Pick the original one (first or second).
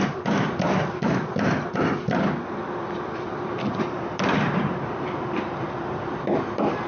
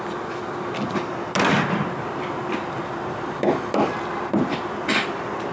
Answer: second